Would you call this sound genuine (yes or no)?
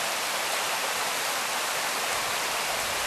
yes